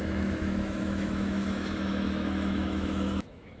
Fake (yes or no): yes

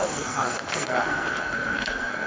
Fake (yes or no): yes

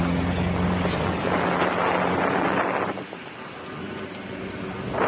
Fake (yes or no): no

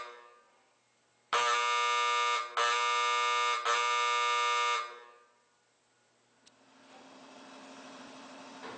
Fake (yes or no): no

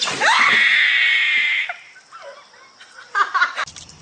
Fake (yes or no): no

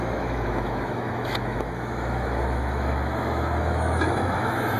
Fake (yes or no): yes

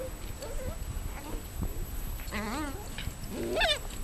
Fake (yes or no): no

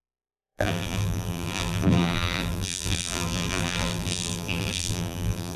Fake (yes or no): yes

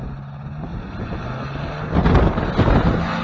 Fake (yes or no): no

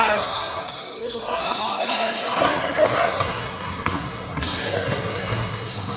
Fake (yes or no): yes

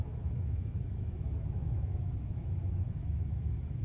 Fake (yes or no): yes